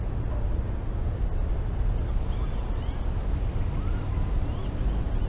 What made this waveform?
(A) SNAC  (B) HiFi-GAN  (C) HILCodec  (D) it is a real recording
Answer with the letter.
D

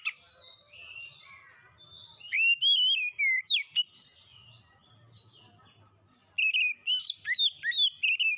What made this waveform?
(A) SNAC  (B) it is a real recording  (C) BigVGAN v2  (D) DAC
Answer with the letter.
B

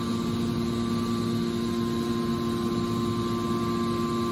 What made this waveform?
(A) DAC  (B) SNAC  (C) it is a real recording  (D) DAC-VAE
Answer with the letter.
C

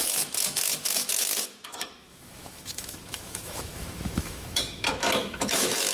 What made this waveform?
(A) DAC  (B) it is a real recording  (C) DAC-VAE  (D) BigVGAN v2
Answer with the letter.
C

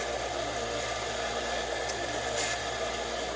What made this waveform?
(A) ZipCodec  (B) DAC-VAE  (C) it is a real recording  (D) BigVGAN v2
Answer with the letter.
C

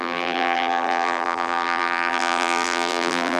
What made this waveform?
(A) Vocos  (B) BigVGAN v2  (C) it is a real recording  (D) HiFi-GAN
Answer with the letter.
B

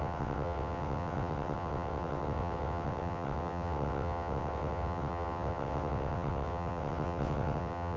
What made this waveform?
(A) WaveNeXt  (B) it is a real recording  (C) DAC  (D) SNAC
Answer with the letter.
A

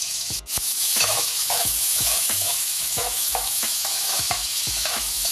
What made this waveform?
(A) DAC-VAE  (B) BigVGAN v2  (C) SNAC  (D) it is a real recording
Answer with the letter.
A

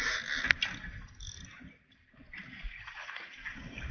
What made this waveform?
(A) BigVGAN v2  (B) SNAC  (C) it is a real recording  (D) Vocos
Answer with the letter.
C